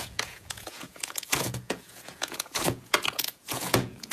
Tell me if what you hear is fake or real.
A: fake